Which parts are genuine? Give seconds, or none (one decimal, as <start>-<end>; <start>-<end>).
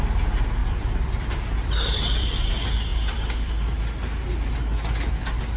0.0-0.6; 2.5-2.9; 3.5-5.6